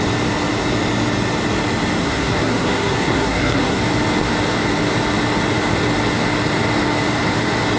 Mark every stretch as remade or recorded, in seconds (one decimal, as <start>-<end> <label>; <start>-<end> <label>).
0.0-2.0 recorded; 2.0-3.8 remade; 3.8-7.8 recorded